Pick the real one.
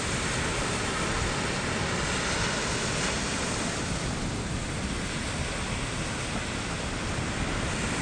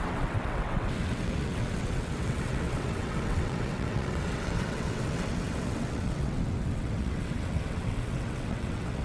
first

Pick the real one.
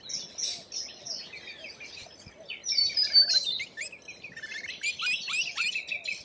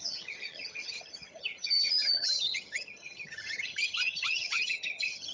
first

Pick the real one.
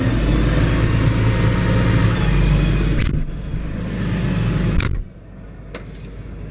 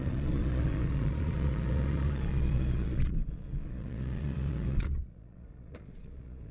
first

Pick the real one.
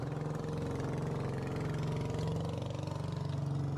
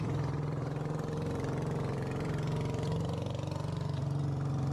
first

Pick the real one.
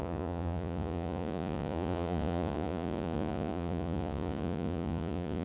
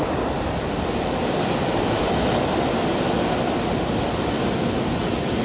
second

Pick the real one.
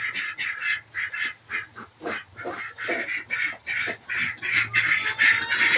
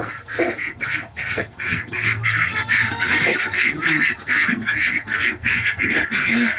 first